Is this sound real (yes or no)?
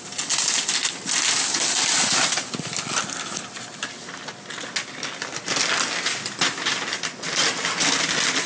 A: yes